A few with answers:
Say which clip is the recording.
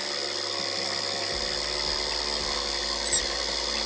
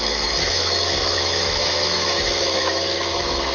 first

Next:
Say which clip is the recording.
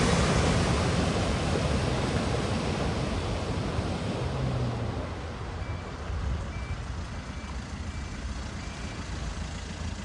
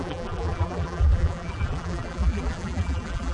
first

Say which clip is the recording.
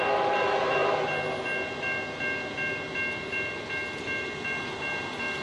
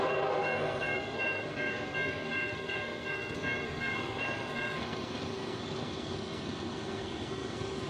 first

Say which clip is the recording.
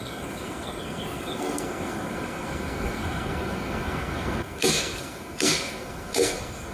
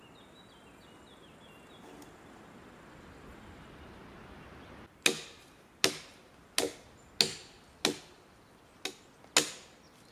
second